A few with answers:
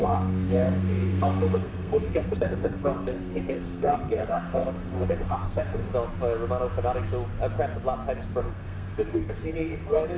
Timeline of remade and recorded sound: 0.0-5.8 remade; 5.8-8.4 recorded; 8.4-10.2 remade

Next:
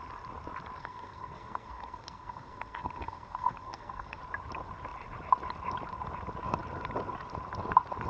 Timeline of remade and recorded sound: 0.0-0.8 recorded; 0.8-4.2 remade; 4.2-8.1 recorded

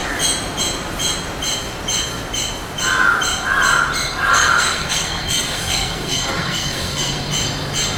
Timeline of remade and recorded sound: 0.0-4.3 recorded; 4.3-7.3 remade; 7.3-8.0 recorded

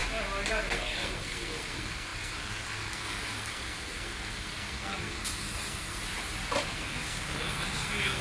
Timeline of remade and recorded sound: 0.0-0.5 recorded; 0.5-6.0 remade; 6.0-6.7 recorded; 6.7-8.2 remade

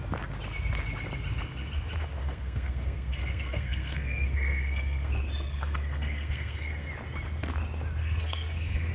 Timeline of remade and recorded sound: 0.0-2.2 recorded; 2.2-6.9 remade; 6.9-8.0 recorded; 8.0-8.9 remade

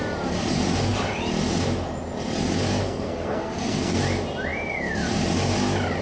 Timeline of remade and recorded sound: 0.0-2.8 recorded; 2.8-4.0 remade; 4.0-6.0 recorded